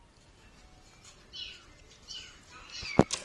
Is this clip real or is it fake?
real